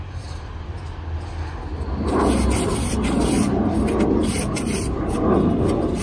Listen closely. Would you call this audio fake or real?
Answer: real